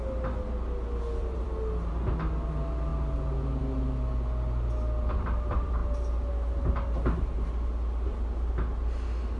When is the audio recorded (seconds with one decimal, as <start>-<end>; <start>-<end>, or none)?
0.0-1.2; 1.9-9.4